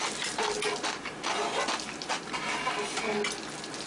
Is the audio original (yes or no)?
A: yes